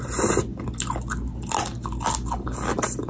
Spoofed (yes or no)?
no